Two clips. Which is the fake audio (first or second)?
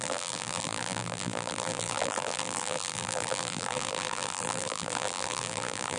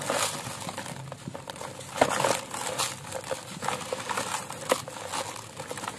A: first